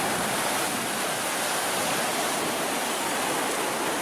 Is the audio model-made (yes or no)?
no